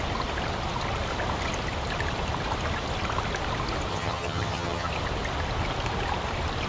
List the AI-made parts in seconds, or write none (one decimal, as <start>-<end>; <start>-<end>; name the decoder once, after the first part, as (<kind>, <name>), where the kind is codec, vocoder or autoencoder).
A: 3.9-4.9 (vocoder, HiFi-GAN)